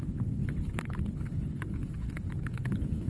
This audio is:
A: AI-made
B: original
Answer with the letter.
A